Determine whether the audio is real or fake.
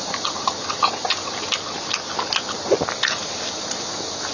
real